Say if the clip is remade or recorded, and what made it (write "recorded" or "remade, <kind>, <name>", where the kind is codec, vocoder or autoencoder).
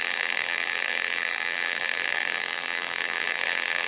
remade, vocoder, BigVGAN v2